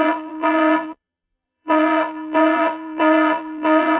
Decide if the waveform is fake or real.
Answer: fake